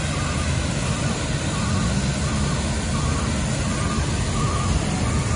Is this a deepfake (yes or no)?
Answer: no